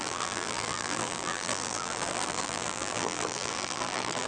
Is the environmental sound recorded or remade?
remade